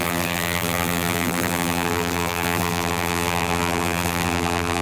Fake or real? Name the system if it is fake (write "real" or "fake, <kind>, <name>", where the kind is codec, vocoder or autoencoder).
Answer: fake, vocoder, BigVGAN v2